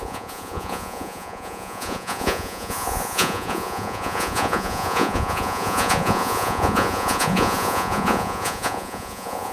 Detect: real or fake fake